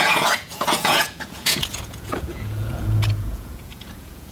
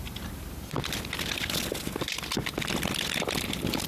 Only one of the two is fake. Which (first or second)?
first